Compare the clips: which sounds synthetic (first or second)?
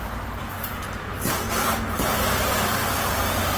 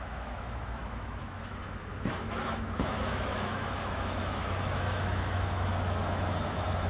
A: second